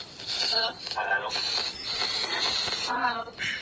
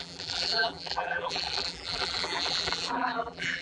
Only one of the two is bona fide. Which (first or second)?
first